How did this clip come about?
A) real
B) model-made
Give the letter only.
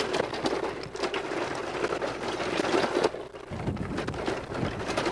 A